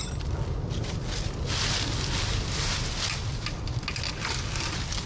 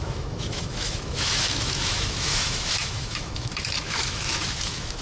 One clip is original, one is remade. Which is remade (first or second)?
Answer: second